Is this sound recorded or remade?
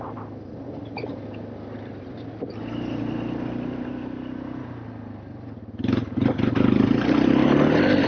recorded